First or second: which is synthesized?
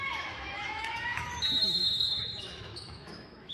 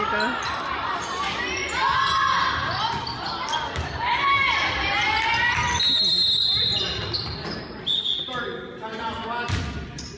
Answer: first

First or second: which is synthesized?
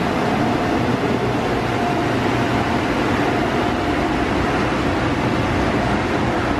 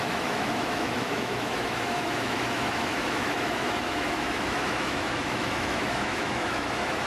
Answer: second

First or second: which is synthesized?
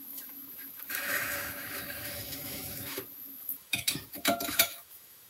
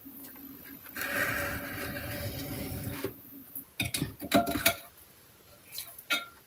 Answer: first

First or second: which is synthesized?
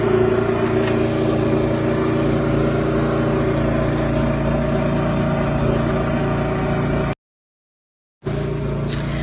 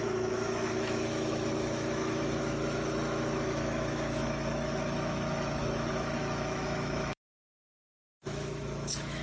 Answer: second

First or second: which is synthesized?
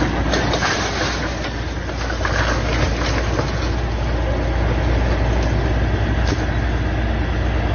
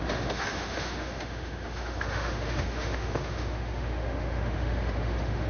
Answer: second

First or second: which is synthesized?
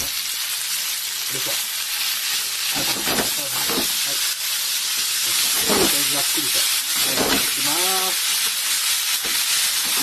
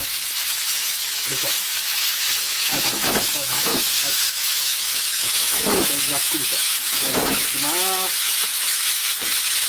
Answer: second